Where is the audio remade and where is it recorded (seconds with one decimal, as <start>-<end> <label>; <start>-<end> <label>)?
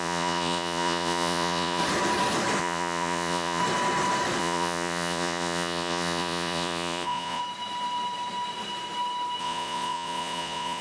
0.0-1.8 remade; 1.8-2.6 recorded; 2.6-3.6 remade; 3.6-4.4 recorded; 4.4-7.4 remade; 7.4-9.4 recorded; 9.4-10.8 remade